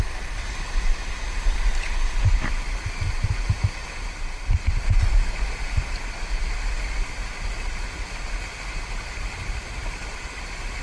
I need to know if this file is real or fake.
real